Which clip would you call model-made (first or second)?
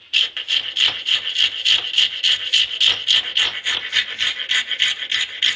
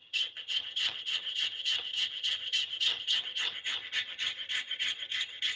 second